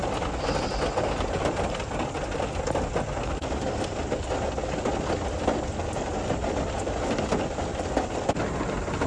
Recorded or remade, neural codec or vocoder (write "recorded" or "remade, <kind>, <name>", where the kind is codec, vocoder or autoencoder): recorded